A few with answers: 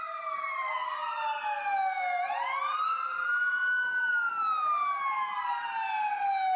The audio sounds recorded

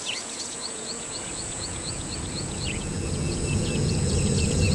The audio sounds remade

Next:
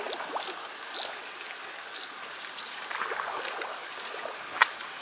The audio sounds recorded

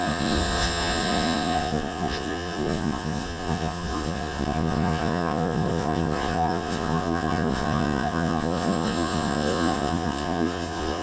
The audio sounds remade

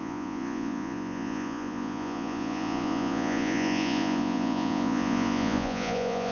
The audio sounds remade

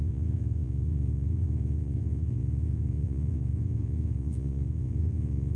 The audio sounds remade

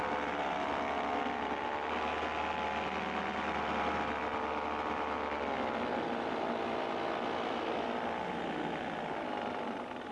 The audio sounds recorded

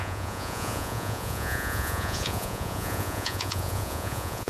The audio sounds remade